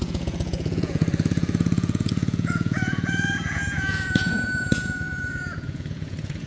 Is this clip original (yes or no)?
no